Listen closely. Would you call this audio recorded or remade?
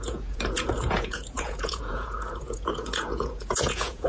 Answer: remade